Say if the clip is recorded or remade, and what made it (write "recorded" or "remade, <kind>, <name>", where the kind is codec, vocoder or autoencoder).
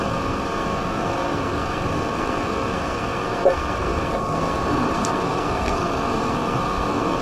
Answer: remade, codec, SNAC